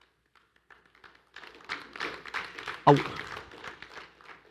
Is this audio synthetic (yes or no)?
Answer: yes